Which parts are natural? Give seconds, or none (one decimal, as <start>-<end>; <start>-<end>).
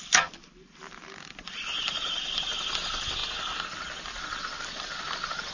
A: 0.0-5.5